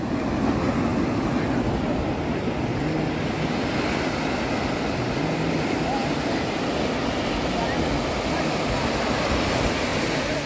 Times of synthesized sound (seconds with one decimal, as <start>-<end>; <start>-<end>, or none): none